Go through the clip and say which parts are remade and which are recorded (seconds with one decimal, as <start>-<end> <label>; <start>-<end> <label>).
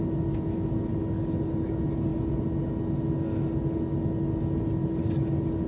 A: 0.0-5.7 recorded